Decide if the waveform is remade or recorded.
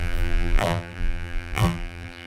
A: remade